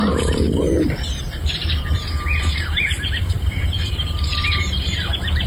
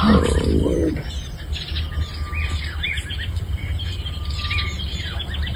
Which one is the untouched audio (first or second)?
second